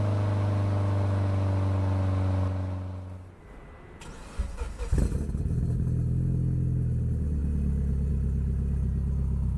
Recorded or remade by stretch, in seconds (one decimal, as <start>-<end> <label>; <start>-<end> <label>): 0.0-9.6 recorded